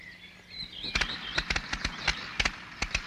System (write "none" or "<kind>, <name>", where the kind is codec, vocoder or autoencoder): none